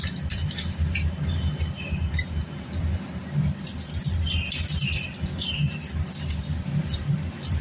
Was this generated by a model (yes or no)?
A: no